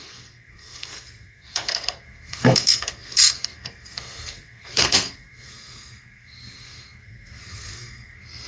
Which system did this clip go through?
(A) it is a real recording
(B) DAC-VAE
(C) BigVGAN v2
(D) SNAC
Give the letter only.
D